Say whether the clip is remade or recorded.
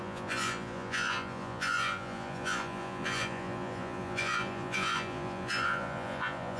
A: remade